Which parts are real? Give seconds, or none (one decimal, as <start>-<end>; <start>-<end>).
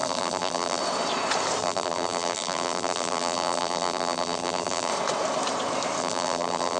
0.8-1.6; 4.9-6.0